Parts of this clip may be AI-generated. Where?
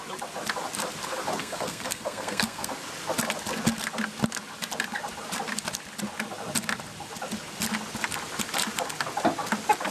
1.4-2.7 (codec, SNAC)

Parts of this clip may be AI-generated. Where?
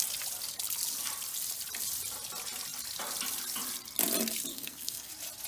4.5-5.1 (codec, SNAC)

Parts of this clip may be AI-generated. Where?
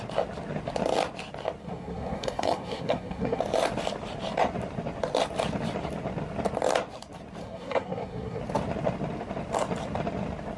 1.6-3.4 (codec, SNAC); 7.4-8.4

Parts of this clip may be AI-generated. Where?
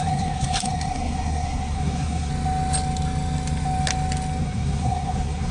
0.0-2.3 (codec, SNAC); 4.4-5.5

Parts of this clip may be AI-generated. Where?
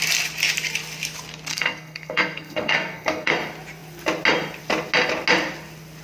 1.5-3.3 (codec, SNAC)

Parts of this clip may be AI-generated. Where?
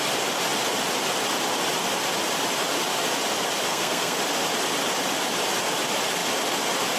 3.7-4.2 (codec, SNAC)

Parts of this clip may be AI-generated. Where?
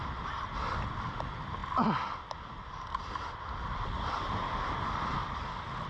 none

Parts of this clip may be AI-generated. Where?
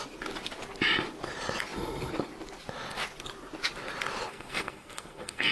4.3-5.5 (codec, SNAC)